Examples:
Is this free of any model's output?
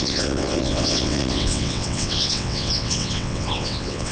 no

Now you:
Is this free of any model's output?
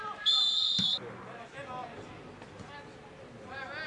yes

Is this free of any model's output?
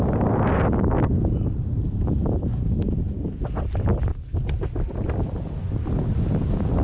yes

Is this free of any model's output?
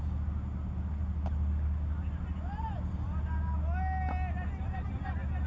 yes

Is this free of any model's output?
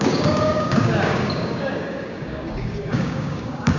no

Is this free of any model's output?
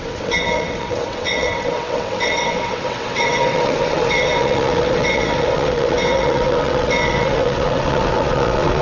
no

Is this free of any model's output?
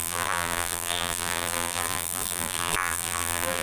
no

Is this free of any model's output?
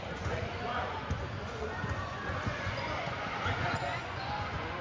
no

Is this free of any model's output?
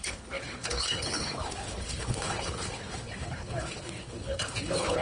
no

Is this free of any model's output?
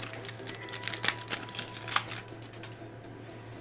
yes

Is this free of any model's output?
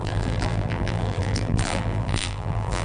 no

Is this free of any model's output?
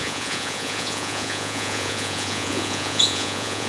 no